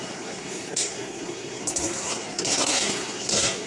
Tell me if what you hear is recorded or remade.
remade